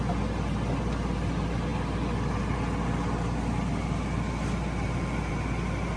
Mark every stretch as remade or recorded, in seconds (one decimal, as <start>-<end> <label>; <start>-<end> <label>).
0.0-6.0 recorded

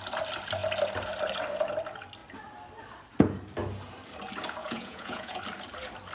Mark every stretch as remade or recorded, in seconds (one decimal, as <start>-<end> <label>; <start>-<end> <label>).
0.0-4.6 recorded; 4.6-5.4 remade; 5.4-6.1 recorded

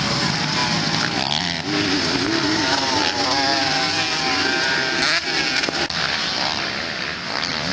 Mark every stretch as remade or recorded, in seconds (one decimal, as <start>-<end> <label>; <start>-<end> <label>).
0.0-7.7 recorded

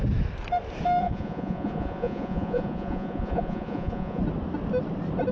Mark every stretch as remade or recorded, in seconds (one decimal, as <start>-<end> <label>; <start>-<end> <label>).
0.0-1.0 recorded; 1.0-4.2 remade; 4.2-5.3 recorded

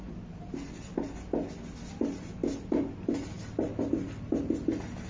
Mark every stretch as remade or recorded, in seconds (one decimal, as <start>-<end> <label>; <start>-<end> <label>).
0.0-5.1 recorded

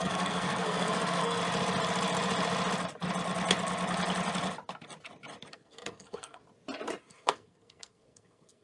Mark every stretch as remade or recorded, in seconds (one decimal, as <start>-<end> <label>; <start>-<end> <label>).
0.0-1.4 remade; 1.4-5.5 recorded; 5.5-6.4 remade; 6.4-7.0 recorded; 7.0-8.6 remade